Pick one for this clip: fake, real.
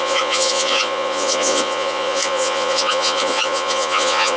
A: fake